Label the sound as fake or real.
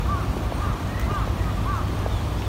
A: real